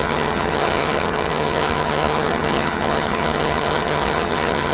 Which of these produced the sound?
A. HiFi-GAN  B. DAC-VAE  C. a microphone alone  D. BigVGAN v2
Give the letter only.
A